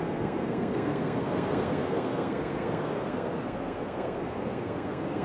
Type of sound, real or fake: fake